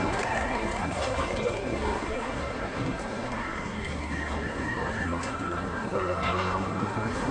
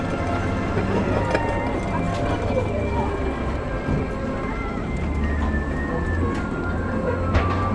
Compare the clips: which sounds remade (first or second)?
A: first